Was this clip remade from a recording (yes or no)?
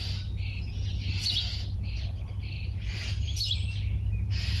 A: no